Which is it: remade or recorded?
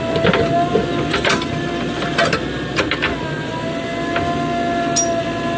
recorded